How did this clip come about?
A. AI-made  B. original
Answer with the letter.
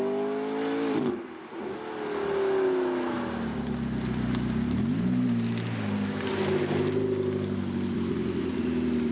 B